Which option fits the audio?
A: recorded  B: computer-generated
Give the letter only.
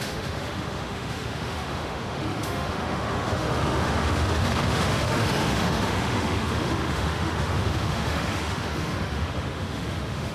B